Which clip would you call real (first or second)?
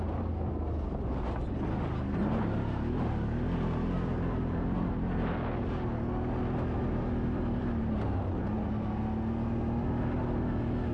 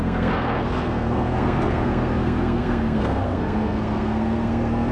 first